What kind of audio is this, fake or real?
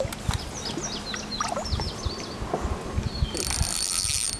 real